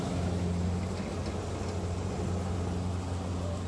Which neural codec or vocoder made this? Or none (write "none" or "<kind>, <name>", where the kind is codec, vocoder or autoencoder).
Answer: none